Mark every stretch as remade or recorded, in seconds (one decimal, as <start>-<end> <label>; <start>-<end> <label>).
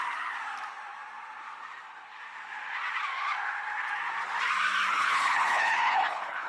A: 0.0-4.9 recorded; 4.9-6.5 remade